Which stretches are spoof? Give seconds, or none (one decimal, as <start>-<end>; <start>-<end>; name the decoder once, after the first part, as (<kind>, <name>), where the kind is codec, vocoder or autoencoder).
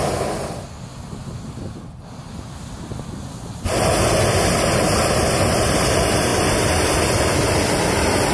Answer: none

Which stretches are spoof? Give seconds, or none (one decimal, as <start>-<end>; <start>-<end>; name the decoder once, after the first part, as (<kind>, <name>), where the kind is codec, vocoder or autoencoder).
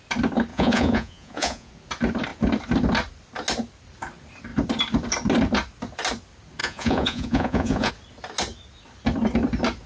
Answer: 0.5-1.7 (vocoder, Vocos); 6.6-7.9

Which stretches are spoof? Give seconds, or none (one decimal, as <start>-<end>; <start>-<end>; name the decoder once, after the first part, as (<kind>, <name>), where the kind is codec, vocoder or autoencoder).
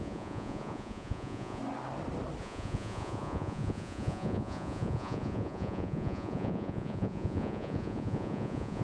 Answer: 0.0-1.6 (vocoder, Vocos); 2.4-8.8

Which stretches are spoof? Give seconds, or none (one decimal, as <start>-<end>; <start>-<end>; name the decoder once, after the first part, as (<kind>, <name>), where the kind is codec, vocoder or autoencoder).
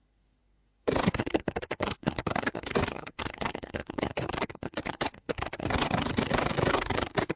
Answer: 0.0-7.4 (codec, SNAC)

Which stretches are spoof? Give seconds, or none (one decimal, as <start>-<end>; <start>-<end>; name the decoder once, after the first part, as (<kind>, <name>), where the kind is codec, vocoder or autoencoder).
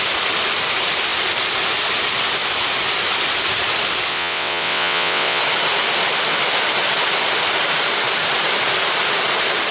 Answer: 4.1-5.4 (vocoder, WaveNeXt)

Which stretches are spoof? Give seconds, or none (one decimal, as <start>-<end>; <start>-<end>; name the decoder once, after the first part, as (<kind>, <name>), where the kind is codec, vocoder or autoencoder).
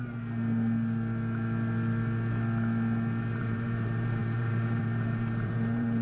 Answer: 3.3-6.0 (vocoder, BigVGAN v2)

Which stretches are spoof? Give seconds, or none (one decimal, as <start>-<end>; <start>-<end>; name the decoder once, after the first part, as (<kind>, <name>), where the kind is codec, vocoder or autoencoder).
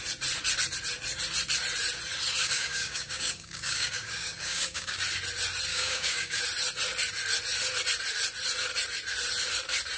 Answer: 2.4-5.0 (codec, DAC); 5.7-6.4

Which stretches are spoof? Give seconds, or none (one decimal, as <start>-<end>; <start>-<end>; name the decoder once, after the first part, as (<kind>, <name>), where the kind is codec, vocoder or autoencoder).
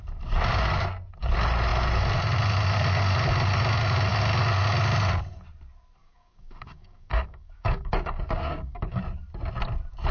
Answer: 6.0-9.0 (codec, DAC)